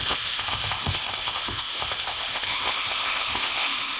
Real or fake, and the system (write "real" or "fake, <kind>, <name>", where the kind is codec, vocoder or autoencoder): fake, codec, ZipCodec